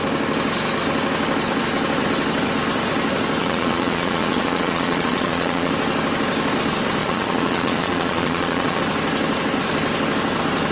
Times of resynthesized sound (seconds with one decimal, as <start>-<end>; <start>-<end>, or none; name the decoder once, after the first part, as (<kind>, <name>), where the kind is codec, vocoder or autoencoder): 3.4-5.7 (vocoder, Vocos); 7.0-8.8